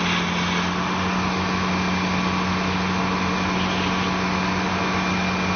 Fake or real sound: real